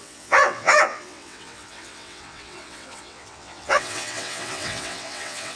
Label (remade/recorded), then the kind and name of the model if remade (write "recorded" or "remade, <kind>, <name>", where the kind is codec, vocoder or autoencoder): remade, vocoder, WaveNeXt